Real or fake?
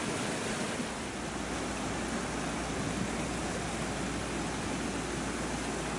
real